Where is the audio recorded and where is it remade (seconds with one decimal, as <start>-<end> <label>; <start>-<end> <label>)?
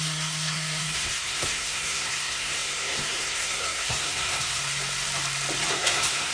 0.0-4.6 remade; 4.6-5.7 recorded; 5.7-6.3 remade